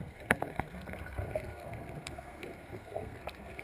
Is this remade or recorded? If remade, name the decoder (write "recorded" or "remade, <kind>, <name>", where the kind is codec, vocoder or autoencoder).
remade, codec, SNAC